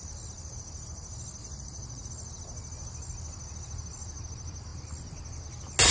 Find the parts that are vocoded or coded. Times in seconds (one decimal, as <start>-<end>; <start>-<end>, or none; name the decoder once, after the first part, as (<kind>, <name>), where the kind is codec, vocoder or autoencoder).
1.4-2.1 (vocoder, Vocos)